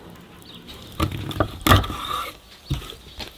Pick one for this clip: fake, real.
real